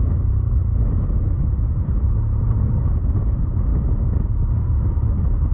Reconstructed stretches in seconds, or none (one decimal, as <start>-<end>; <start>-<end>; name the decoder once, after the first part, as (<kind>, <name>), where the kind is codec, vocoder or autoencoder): none